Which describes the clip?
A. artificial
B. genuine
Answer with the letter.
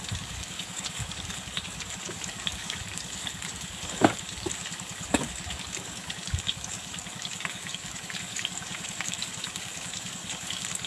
A